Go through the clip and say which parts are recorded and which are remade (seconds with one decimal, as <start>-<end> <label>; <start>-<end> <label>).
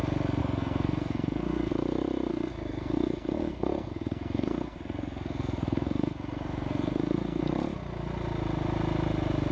0.0-0.4 recorded; 0.4-1.7 remade; 1.7-2.3 recorded; 2.3-7.4 remade; 7.4-9.5 recorded